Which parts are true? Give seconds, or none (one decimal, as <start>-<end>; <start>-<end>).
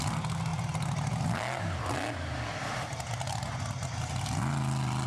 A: 0.0-5.1